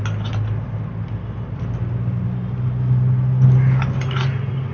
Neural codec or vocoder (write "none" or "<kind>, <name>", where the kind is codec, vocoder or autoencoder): none